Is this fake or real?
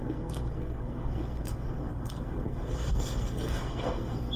fake